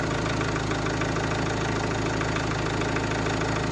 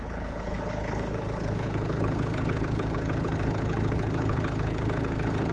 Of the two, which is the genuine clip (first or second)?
first